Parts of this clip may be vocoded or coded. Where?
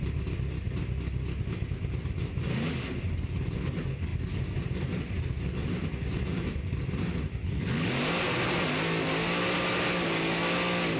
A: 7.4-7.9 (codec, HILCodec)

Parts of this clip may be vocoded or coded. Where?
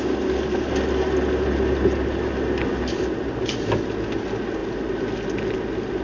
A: none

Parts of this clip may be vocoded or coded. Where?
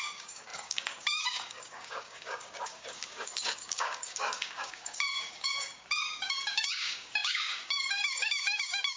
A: 0.0-9.0 (codec, DAC)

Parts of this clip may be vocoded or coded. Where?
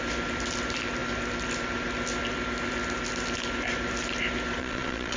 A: 4.6-5.2 (vocoder, Vocos)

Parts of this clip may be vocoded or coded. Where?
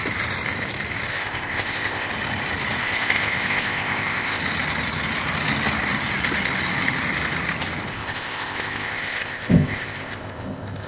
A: 1.1-2.1 (codec, ZipCodec); 2.8-4.4; 7.9-10.9